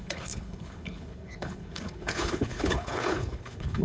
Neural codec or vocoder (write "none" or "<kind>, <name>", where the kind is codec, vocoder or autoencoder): codec, HILCodec